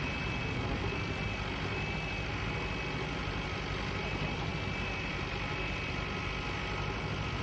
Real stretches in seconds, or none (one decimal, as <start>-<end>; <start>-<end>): 0.0-7.4